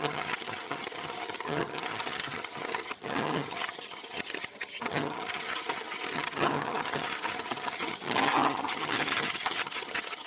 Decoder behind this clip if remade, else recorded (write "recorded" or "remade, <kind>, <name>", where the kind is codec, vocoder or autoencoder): remade, vocoder, HiFi-GAN